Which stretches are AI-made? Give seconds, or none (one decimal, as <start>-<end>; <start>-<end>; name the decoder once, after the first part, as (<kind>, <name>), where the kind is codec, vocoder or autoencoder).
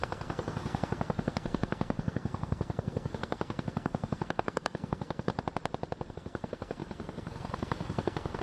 0.0-5.3 (codec, SNAC); 6.1-8.4